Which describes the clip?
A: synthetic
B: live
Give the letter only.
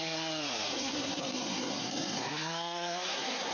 A